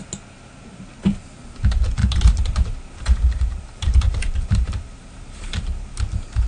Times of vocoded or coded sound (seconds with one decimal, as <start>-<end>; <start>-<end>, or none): 2.0-5.9